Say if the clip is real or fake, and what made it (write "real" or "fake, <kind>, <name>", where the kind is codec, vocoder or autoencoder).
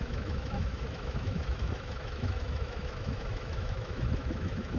fake, autoencoder, DAC-VAE